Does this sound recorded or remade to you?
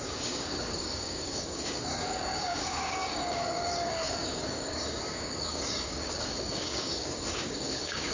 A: remade